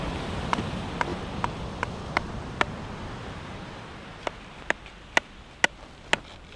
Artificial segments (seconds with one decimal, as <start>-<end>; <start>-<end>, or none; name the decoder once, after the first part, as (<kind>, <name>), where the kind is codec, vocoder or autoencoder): 1.1-2.3 (vocoder, BigVGAN v2)